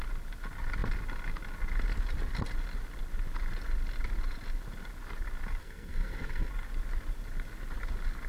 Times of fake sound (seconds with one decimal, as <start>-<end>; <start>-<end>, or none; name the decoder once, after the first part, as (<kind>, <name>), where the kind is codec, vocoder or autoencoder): 5.6-6.5 (codec, SNAC)